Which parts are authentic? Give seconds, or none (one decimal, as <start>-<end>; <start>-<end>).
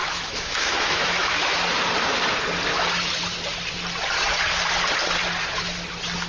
1.6-6.3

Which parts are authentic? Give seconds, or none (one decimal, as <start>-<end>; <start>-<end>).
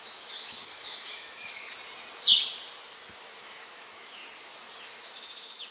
1.7-3.1; 4.2-4.8